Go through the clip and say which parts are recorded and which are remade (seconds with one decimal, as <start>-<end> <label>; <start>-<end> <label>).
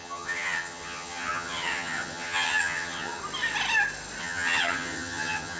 0.0-3.2 remade; 3.2-4.2 recorded; 4.2-5.6 remade